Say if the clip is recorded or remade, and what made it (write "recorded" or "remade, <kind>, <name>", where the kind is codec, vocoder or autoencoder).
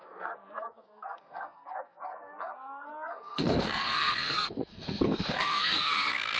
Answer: remade, codec, SNAC